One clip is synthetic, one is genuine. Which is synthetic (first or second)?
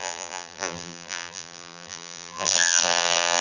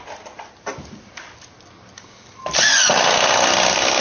first